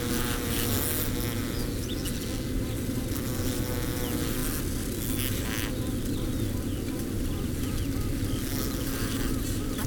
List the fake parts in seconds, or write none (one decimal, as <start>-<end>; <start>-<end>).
none